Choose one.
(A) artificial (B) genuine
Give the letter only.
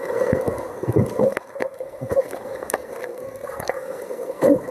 A